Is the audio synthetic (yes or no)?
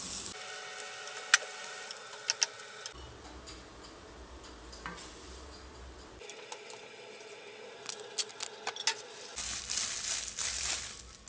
no